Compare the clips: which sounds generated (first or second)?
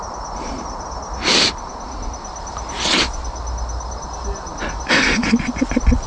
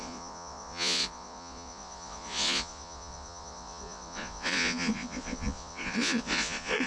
second